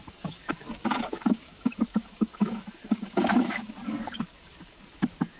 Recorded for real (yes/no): no